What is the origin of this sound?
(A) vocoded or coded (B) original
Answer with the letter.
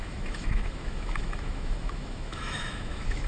A